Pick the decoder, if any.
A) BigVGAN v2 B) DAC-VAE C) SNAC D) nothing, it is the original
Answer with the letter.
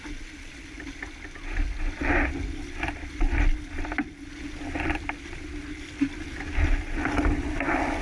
D